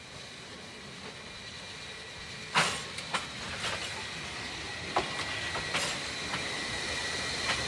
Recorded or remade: recorded